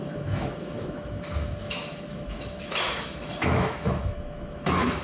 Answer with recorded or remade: remade